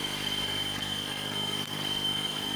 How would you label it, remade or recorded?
remade